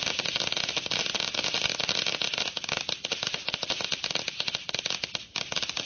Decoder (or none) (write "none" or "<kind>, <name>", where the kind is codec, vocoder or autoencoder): none